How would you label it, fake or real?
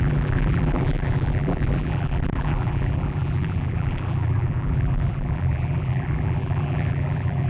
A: fake